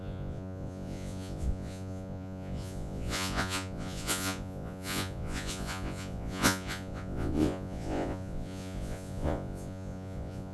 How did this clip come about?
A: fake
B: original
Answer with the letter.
A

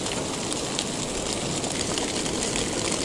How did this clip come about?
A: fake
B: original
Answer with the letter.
B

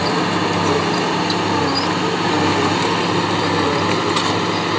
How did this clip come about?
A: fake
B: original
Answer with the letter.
B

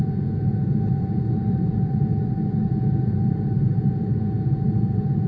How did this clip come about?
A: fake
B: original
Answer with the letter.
A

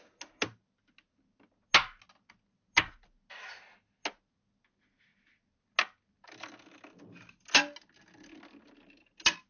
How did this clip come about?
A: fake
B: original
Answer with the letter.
B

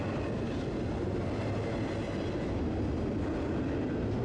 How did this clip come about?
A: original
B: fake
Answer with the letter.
A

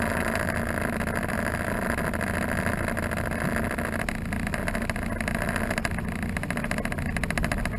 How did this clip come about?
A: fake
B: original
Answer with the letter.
B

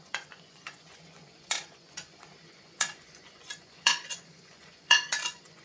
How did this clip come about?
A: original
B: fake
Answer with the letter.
B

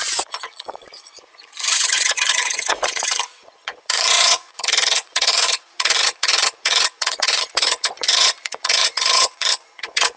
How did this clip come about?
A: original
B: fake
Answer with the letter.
B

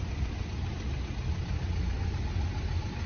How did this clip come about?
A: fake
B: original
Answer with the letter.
B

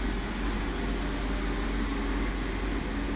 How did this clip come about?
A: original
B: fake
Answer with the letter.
A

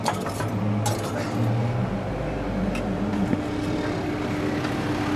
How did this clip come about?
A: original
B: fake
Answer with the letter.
A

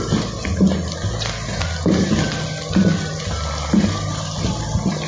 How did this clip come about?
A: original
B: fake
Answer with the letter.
A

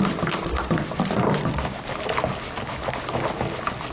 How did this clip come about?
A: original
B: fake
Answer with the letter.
A